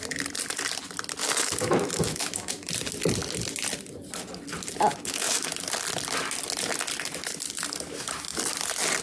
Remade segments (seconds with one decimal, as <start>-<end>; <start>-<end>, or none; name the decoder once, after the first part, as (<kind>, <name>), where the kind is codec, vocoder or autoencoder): 1.2-2.7 (autoencoder, DAC-VAE); 4.9-5.5